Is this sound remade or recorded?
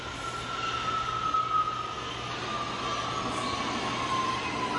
recorded